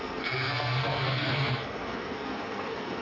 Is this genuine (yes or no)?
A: no